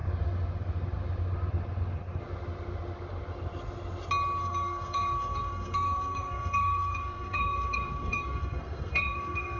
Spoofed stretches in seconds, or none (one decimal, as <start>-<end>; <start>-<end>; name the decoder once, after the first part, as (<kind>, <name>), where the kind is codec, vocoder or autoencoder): 4.4-9.6 (codec, SNAC)